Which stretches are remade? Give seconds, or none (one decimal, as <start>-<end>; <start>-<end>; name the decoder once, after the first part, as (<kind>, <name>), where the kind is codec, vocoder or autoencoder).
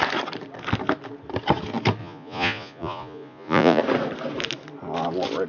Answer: 2.0-3.8 (vocoder, Vocos)